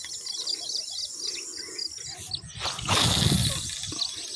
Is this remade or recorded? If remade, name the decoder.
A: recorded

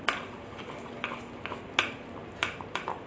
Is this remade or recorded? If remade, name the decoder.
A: recorded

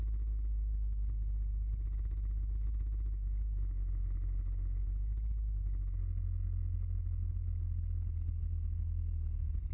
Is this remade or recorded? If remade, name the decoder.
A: recorded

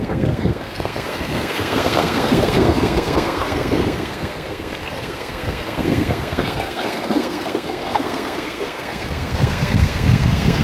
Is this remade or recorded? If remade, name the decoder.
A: remade, codec, SNAC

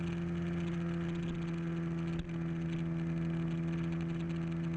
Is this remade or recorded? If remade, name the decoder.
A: recorded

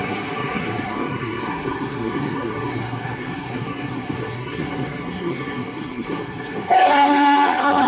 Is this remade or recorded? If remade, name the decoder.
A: remade, codec, SNAC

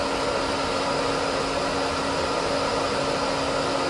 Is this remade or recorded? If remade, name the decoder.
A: recorded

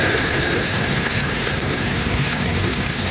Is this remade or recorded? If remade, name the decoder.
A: remade, codec, SNAC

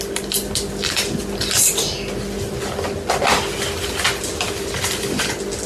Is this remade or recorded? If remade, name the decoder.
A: recorded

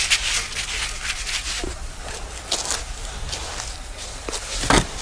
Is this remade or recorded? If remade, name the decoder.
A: recorded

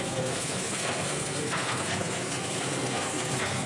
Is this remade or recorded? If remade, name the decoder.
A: remade, codec, SNAC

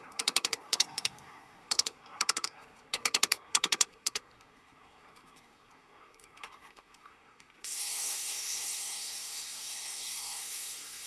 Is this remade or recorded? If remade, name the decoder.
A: remade, codec, SNAC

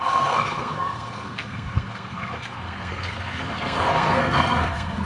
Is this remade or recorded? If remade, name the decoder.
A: remade, codec, SNAC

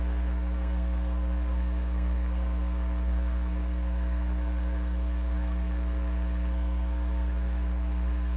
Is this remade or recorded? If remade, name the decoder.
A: remade, codec, SNAC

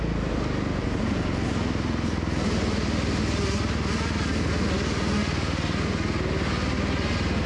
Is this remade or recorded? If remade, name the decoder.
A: recorded